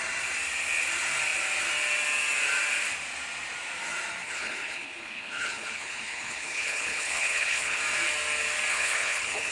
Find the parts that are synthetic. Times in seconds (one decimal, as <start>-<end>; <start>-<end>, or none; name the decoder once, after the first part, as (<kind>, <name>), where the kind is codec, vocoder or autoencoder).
4.2-7.8 (codec, HILCodec); 8.7-9.5